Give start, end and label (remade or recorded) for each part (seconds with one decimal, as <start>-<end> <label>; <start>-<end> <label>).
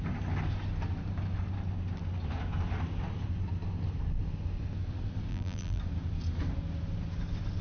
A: 0.0-5.3 recorded; 5.3-5.8 remade; 5.8-7.6 recorded